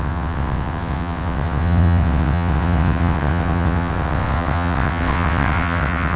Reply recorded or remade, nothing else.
remade